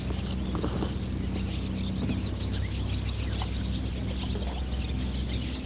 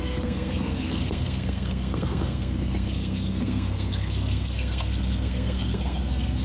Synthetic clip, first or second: second